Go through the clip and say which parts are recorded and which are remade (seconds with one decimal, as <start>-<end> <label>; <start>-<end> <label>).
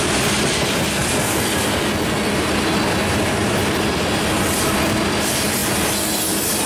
0.0-6.7 recorded